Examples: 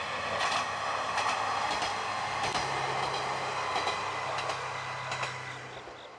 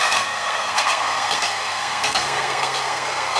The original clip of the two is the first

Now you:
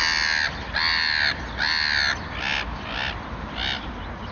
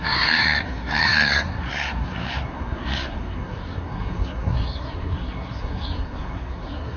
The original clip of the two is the first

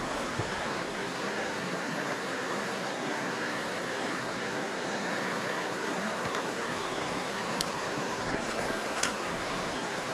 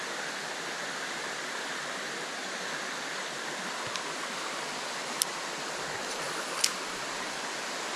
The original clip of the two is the second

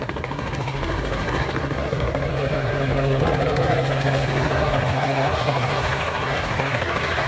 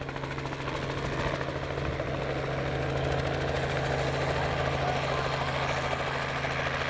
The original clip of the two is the second